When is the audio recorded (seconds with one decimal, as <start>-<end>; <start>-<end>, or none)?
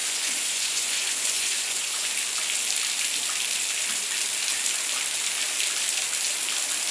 2.1-6.9